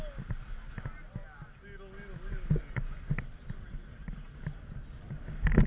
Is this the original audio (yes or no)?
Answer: yes